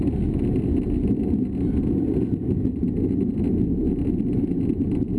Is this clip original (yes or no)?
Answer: yes